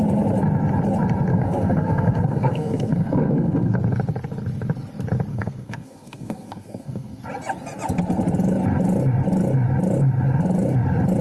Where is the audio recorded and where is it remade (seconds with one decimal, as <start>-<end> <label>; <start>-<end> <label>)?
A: 0.0-1.3 recorded; 1.3-3.8 remade; 3.8-5.3 recorded; 5.3-7.2 remade; 7.2-11.2 recorded